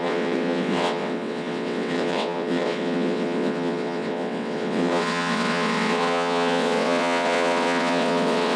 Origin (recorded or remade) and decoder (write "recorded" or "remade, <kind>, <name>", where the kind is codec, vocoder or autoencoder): remade, vocoder, WaveNeXt